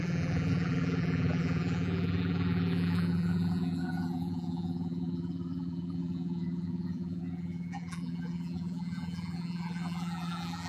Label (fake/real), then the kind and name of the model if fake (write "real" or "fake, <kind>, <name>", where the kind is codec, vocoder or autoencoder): fake, vocoder, BigVGAN v2